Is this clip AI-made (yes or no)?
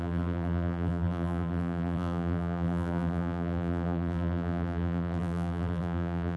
yes